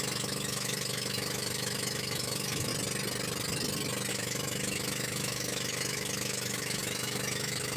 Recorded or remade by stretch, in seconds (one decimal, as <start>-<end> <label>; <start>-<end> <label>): 0.0-2.7 remade; 2.7-4.1 recorded; 4.1-7.8 remade